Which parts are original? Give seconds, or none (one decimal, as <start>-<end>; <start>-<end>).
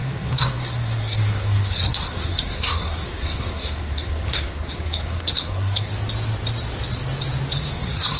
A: 5.9-7.7